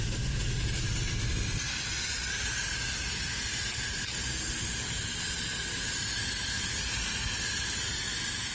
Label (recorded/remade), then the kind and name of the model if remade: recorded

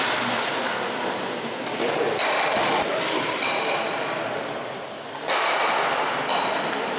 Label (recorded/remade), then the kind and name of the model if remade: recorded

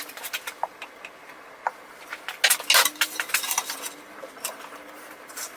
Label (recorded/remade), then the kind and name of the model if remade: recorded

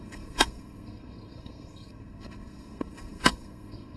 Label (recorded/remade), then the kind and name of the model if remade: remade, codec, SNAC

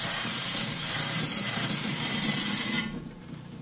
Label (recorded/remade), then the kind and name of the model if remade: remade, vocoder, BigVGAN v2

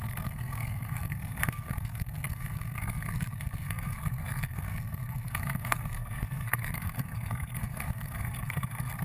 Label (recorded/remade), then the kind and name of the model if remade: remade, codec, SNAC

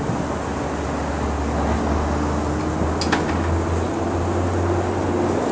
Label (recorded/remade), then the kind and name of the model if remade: recorded